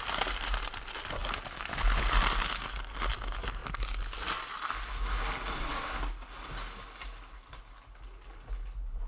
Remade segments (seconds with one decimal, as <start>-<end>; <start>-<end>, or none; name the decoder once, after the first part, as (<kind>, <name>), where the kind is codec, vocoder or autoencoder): 1.2-2.3 (vocoder, BigVGAN v2)